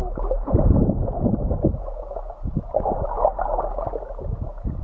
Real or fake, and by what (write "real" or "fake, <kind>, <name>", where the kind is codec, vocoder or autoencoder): real